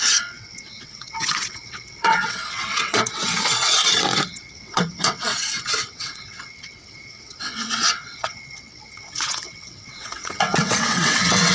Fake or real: fake